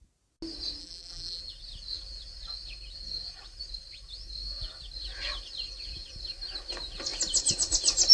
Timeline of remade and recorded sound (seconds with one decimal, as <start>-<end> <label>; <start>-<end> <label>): 0.0-0.8 recorded; 0.8-1.4 remade; 1.4-8.1 recorded